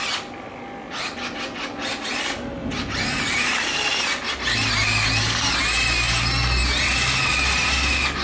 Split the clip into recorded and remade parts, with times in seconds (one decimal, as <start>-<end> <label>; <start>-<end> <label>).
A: 0.0-8.2 recorded